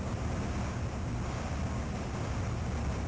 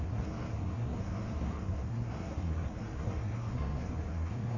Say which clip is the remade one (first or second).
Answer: second